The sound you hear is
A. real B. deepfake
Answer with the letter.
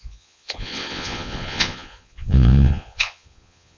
B